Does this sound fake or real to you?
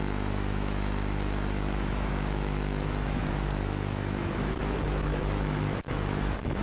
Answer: fake